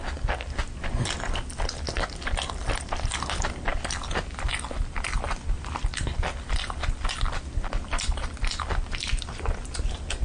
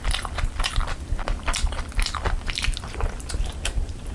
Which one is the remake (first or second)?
second